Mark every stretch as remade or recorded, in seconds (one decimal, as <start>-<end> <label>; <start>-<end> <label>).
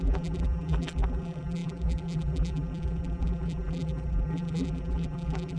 0.0-5.6 remade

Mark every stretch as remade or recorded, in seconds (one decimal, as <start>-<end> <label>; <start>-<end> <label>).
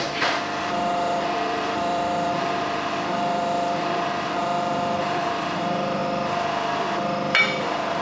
0.0-6.0 remade; 6.0-7.4 recorded; 7.4-8.0 remade